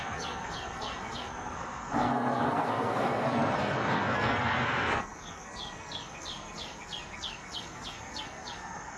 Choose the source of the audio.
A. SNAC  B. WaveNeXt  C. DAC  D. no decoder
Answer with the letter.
A